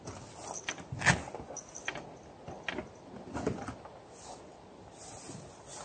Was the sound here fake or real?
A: real